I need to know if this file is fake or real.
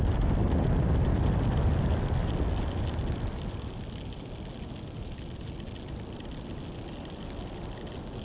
real